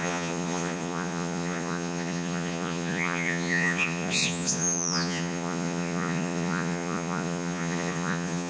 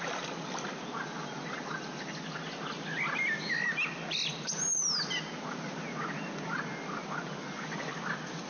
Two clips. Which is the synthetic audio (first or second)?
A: first